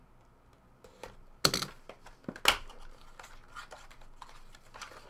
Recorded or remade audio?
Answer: recorded